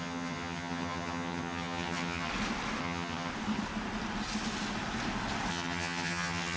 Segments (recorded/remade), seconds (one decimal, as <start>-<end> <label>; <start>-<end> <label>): 0.0-2.3 remade; 2.3-2.8 recorded; 2.8-3.3 remade; 3.3-5.5 recorded; 5.5-6.6 remade